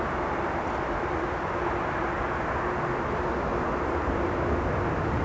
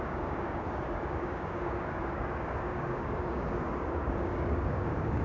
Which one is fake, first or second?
second